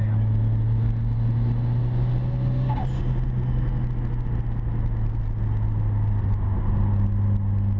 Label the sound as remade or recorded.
recorded